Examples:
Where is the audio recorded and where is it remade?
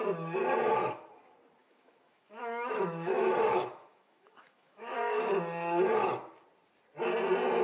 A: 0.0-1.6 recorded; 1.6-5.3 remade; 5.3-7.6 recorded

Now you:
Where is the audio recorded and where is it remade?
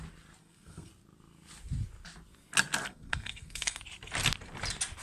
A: 0.0-0.4 recorded; 0.4-0.9 remade; 0.9-2.9 recorded; 2.9-3.8 remade; 3.8-5.0 recorded